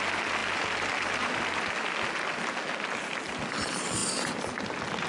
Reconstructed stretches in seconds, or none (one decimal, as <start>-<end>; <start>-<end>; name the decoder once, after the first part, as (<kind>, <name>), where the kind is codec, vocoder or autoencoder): none